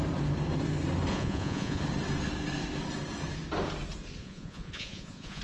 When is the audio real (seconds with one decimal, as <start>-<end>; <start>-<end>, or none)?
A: 0.0-1.1; 1.8-4.2